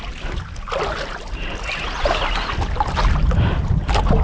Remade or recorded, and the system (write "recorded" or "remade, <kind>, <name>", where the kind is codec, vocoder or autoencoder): recorded